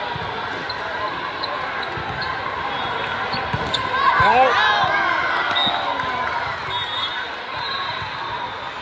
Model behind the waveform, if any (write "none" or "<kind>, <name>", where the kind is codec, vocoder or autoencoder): none